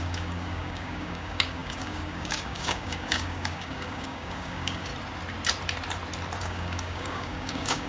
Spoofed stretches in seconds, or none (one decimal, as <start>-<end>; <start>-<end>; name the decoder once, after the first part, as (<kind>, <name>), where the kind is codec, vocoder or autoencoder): 0.0-4.9 (codec, DAC); 6.4-7.9